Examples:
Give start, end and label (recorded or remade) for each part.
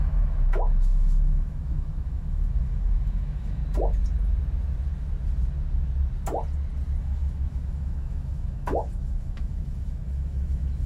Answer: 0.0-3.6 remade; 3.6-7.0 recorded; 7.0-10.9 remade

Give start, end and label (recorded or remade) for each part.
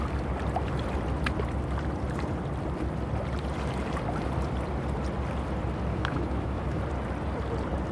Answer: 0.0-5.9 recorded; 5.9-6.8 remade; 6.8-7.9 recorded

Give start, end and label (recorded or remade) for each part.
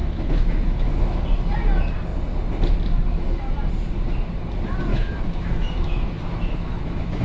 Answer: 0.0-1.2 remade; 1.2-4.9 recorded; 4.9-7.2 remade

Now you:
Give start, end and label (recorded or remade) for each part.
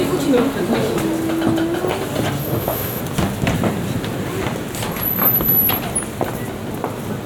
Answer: 0.0-2.4 recorded; 2.4-3.0 remade; 3.0-7.3 recorded